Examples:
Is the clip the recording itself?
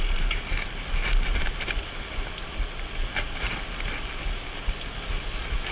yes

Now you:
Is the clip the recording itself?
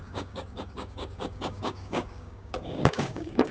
no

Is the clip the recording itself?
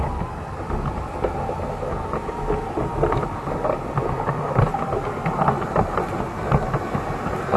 yes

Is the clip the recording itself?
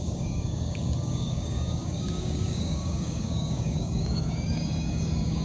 no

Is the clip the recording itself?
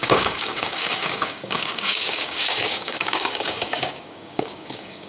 no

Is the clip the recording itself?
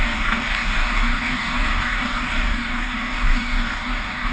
no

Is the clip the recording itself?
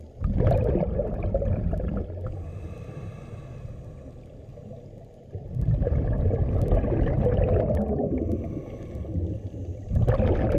yes